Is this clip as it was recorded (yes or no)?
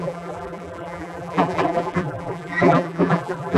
no